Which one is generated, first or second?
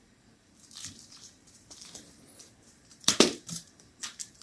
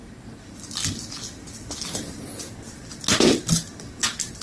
first